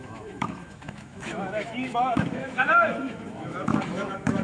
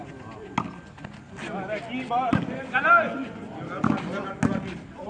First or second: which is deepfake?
first